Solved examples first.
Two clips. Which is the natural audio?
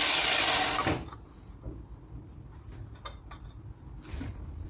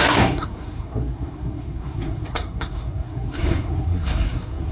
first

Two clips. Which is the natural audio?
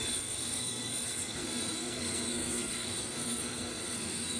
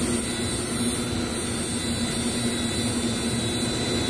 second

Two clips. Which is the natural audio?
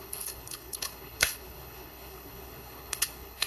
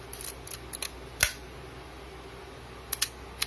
second